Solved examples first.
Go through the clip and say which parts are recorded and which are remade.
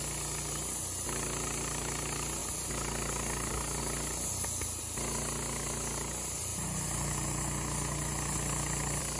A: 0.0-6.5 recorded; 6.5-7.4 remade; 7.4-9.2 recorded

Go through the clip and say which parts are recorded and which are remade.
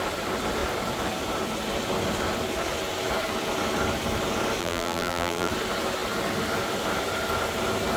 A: 0.0-4.6 recorded; 4.6-5.5 remade; 5.5-8.0 recorded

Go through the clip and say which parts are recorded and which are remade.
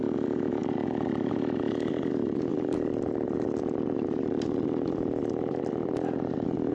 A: 0.0-0.6 recorded; 0.6-1.3 remade; 1.3-2.5 recorded; 2.5-6.7 remade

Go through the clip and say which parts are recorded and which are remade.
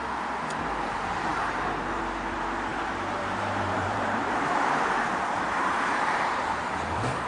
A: 0.0-1.3 recorded; 1.3-2.0 remade; 2.0-2.7 recorded; 2.7-7.3 remade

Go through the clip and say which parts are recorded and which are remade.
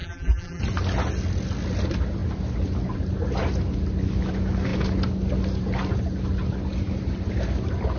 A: 0.0-0.6 remade; 0.6-8.0 recorded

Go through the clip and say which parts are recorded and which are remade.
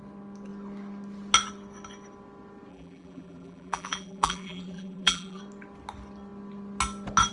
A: 0.0-2.7 recorded; 2.7-5.4 remade; 5.4-7.3 recorded